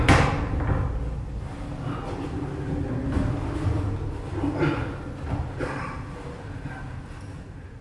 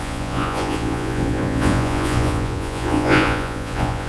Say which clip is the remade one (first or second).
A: second